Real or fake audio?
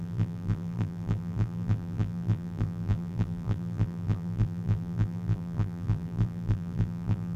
fake